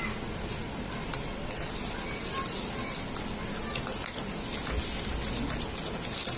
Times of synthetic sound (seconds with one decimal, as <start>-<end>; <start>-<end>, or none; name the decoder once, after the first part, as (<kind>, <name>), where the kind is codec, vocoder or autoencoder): none